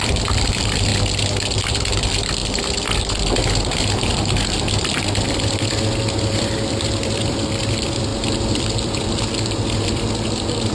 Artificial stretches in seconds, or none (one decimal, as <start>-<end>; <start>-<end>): 0.0-0.9; 1.7-2.4; 6.3-10.7